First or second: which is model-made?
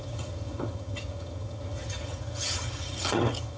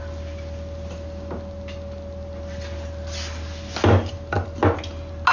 first